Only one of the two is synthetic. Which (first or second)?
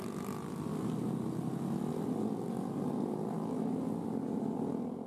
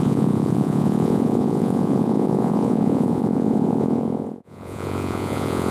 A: second